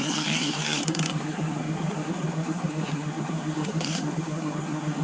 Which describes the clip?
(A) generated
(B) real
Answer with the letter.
A